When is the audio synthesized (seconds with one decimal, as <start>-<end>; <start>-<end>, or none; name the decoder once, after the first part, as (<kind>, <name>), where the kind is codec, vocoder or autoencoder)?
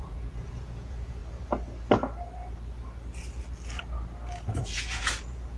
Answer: 0.0-1.2 (vocoder, Vocos); 4.6-5.6